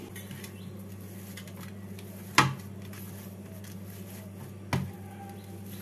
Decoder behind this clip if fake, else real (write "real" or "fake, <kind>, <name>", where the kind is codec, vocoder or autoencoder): real